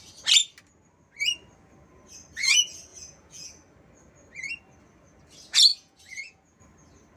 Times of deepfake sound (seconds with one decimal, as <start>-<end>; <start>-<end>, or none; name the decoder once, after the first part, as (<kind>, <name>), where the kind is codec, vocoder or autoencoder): 2.9-3.5 (vocoder, Vocos); 5.7-6.6